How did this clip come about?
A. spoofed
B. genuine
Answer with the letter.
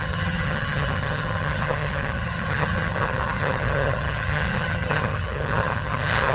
A